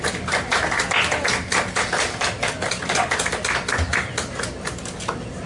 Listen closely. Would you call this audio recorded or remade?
recorded